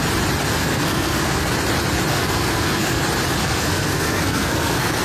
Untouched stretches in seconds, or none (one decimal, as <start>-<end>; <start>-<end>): 0.0-0.6; 1.5-2.1; 3.0-3.4